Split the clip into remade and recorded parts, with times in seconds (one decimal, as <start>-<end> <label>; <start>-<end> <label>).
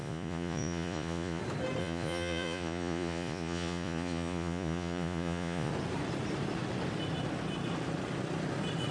0.0-1.4 remade; 1.4-1.8 recorded; 1.8-5.7 remade; 5.7-8.9 recorded